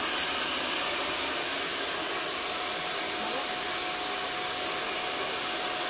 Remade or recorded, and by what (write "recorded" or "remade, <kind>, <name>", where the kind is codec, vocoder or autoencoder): recorded